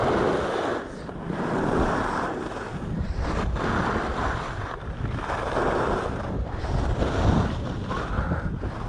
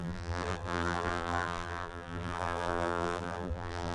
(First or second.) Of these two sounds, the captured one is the first